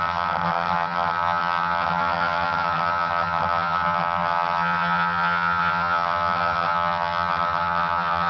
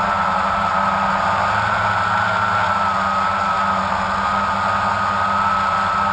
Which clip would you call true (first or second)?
second